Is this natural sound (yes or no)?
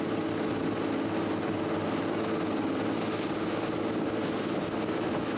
yes